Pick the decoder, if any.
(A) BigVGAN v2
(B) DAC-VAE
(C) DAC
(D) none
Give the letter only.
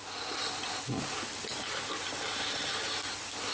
D